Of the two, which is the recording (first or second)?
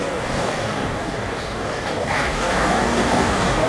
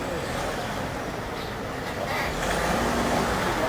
second